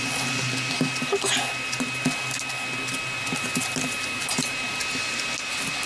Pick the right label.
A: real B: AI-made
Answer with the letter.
A